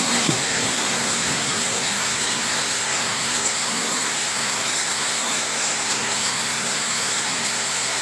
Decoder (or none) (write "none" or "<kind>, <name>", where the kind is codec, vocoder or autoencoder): codec, SNAC